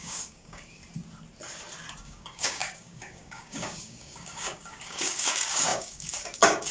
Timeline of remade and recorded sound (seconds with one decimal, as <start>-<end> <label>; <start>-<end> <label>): 0.0-0.8 remade; 0.8-2.0 recorded; 2.0-6.7 remade